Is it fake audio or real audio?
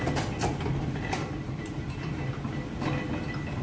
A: real